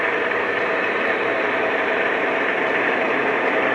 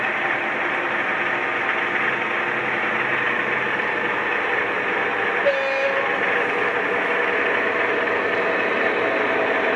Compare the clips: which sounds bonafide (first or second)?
second